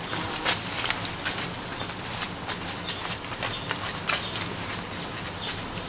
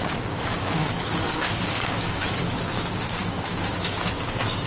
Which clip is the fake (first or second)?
second